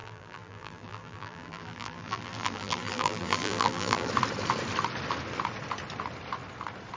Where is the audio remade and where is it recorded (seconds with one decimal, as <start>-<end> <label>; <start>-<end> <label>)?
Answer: 0.0-4.1 remade; 4.1-7.0 recorded

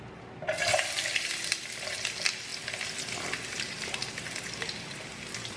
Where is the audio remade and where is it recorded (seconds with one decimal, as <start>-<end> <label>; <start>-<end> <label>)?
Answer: 0.0-5.6 recorded

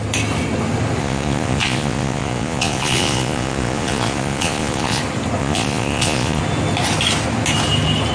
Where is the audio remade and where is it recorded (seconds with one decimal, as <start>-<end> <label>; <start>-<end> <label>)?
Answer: 0.0-1.0 recorded; 1.0-5.0 remade; 5.0-5.4 recorded; 5.4-6.4 remade; 6.4-8.1 recorded